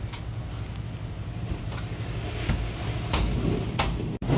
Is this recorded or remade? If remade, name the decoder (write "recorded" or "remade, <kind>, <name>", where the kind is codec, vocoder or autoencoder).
recorded